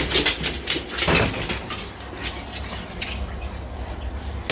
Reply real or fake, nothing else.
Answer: real